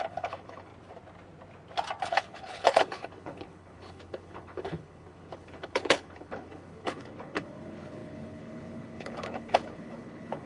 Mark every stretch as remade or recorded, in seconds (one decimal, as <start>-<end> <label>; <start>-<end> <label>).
0.0-0.7 remade; 0.7-2.0 recorded; 2.0-10.5 remade